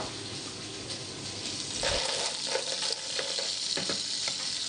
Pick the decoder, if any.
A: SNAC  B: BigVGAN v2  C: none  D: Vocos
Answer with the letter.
C